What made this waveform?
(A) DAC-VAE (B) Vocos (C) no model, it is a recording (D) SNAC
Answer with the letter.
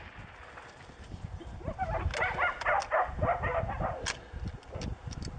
C